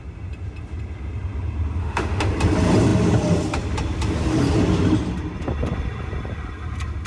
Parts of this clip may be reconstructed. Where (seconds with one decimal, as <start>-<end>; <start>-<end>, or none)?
1.8-2.3